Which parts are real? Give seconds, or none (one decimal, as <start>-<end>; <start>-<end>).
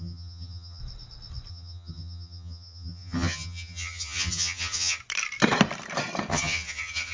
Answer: 0.8-1.5; 5.0-6.3